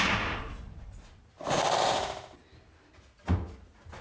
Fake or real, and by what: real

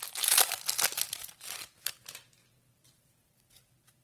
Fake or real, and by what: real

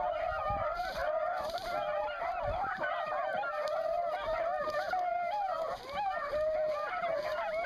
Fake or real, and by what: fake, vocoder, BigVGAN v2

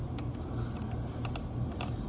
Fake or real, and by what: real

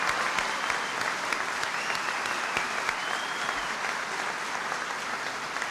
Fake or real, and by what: real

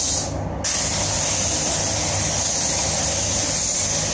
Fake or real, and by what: real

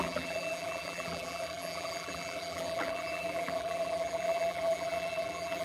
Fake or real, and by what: fake, vocoder, BigVGAN v2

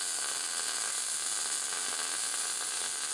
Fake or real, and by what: real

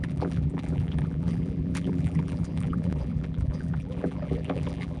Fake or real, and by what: fake, vocoder, BigVGAN v2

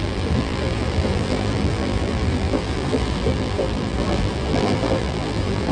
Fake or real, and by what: fake, vocoder, BigVGAN v2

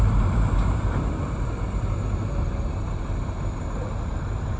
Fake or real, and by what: fake, vocoder, BigVGAN v2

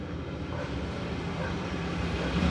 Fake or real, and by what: real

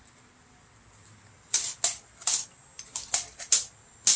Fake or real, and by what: real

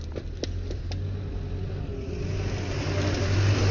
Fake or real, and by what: real